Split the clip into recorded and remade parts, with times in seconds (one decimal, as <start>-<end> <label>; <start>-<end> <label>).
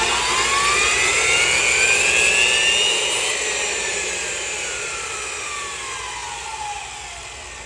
0.0-7.7 recorded